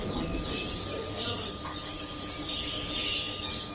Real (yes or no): yes